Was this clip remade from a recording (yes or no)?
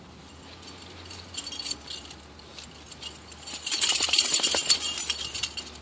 no